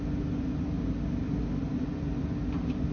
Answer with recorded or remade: recorded